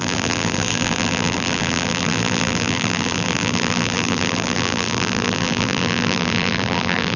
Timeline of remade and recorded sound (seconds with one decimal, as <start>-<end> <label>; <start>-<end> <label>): 0.0-7.2 remade